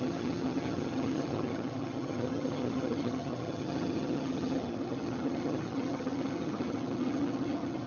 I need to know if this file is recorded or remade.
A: remade